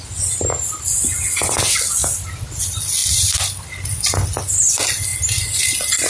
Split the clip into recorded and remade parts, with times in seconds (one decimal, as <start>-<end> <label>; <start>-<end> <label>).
0.0-3.0 recorded; 3.0-4.4 remade; 4.4-5.1 recorded; 5.1-6.1 remade